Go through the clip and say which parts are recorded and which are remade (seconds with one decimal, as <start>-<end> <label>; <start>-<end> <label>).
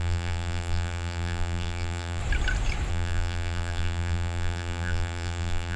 0.0-2.2 remade; 2.2-2.9 recorded; 2.9-5.8 remade